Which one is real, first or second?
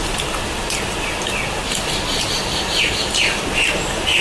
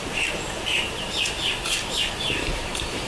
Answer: first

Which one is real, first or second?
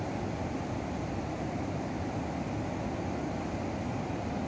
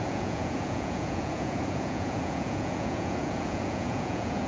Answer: first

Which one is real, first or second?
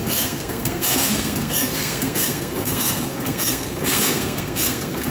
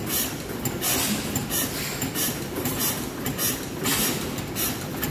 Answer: second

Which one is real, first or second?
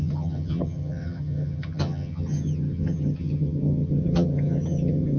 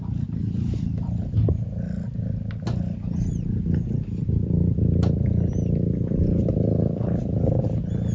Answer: second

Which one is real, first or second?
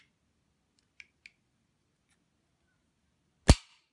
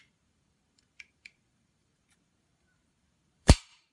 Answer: first